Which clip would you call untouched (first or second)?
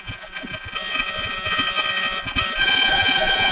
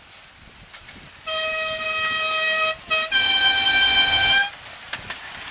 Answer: second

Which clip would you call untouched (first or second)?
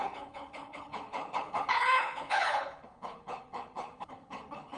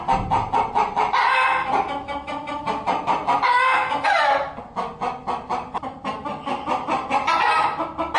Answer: second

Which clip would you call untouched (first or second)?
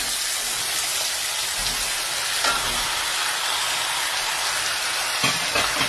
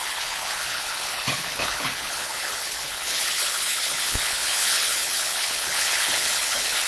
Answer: first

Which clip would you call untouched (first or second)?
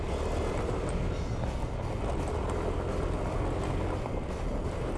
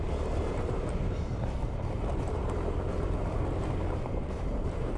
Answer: first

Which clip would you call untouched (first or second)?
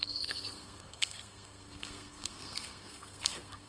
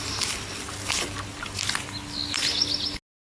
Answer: second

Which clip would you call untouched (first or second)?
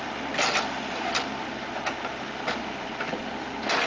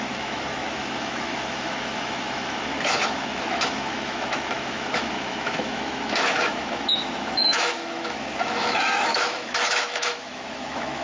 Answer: first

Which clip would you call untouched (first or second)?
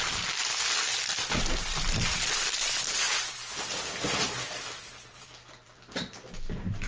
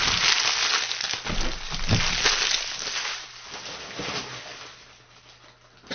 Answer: second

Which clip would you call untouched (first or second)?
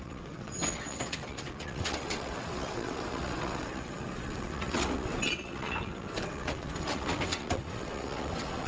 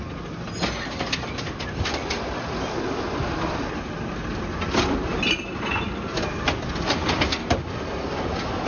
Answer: second